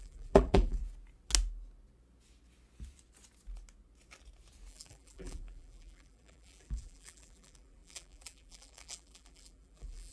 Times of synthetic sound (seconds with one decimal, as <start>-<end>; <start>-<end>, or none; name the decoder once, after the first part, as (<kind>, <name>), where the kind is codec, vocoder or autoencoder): 0.0-0.8 (vocoder, BigVGAN v2); 4.7-10.1

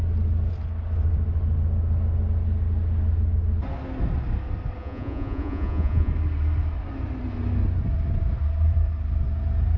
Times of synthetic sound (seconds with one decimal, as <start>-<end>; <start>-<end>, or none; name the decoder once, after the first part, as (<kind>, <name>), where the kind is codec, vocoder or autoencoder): 4.8-6.1 (vocoder, Vocos)

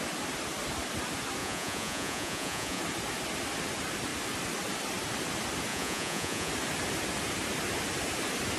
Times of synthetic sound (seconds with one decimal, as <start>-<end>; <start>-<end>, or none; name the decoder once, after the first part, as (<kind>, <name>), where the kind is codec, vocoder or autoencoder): 1.4-2.8 (vocoder, Vocos); 5.7-6.5